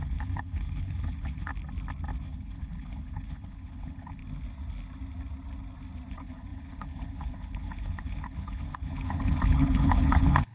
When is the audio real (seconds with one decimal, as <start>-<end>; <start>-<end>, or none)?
1.5-2.2; 4.2-6.1